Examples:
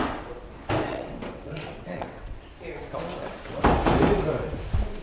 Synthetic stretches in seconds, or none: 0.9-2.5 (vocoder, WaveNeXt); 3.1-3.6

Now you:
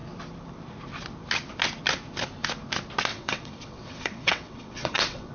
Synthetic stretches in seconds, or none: 3.1-5.3 (vocoder, WaveNeXt)

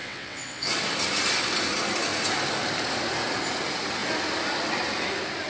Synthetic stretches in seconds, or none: 0.0-0.7 (vocoder, WaveNeXt)

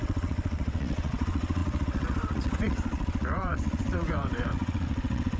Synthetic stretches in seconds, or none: 0.0-5.4 (vocoder, WaveNeXt)